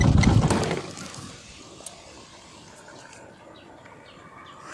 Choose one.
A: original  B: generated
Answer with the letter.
A